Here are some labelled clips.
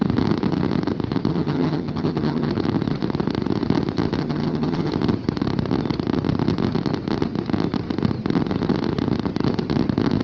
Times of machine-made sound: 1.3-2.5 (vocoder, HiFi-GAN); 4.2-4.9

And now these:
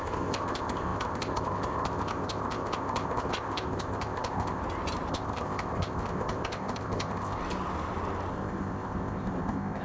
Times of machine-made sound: 0.0-4.6 (codec, ZipCodec); 5.1-7.4; 8.3-9.8

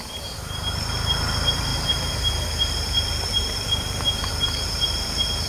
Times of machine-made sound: 0.0-5.5 (vocoder, BigVGAN v2)

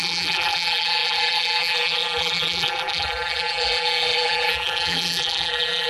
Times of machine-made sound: 0.0-5.9 (vocoder, BigVGAN v2)

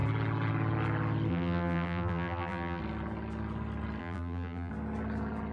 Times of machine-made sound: 1.3-2.8 (vocoder, BigVGAN v2); 4.0-4.7

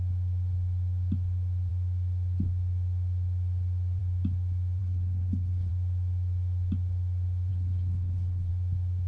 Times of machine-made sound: 4.8-5.7 (codec, HILCodec); 7.5-8.5